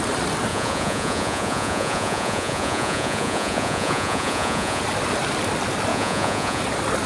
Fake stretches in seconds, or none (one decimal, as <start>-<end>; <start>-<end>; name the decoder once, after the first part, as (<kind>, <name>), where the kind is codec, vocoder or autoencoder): 0.5-4.8 (vocoder, Vocos); 5.9-6.6